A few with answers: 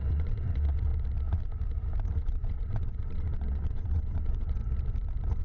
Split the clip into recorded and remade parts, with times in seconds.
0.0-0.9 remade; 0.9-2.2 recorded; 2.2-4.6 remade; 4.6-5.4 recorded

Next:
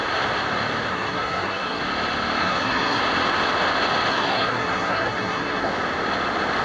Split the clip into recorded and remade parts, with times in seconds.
0.0-0.9 recorded; 0.9-1.8 remade; 1.8-2.4 recorded; 2.4-3.0 remade; 3.0-4.1 recorded; 4.1-5.7 remade; 5.7-6.6 recorded

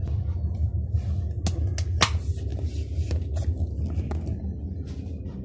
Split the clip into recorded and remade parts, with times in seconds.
0.0-5.4 recorded

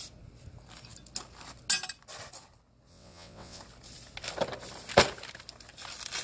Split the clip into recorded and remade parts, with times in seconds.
0.0-2.9 recorded; 2.9-3.6 remade; 3.6-6.2 recorded